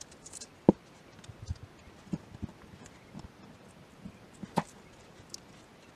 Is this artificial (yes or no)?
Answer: no